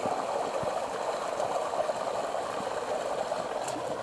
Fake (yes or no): no